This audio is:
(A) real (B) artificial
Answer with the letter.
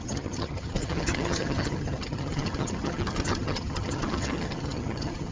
B